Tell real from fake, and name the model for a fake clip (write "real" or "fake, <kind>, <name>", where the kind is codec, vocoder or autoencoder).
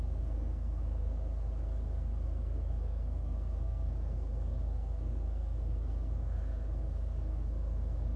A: fake, codec, SNAC